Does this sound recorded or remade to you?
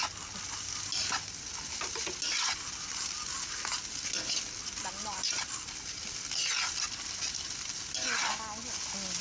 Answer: recorded